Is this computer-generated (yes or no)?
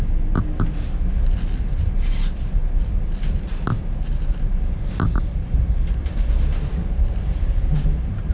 no